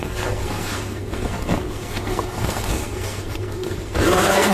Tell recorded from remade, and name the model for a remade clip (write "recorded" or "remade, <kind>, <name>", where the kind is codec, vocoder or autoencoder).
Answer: remade, codec, SNAC